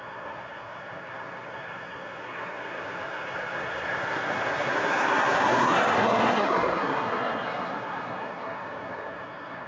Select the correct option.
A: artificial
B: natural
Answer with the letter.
A